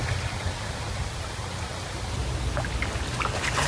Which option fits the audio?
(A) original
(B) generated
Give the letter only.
A